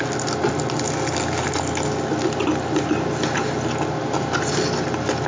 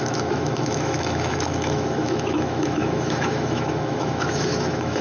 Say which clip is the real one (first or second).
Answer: first